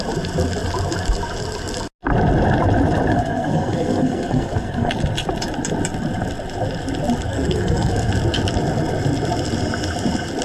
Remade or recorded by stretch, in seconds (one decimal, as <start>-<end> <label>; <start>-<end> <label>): 0.0-3.1 recorded; 3.1-4.9 remade; 4.9-7.3 recorded; 7.3-8.1 remade; 8.1-10.4 recorded